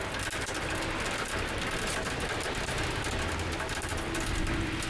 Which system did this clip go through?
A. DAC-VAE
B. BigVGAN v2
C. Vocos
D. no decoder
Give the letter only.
D